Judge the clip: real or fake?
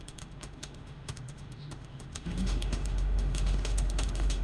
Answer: fake